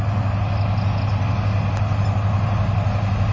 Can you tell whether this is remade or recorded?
recorded